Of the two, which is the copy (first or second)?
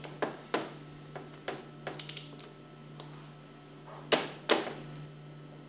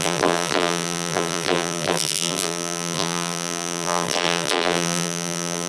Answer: second